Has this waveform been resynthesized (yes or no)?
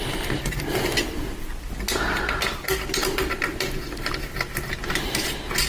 no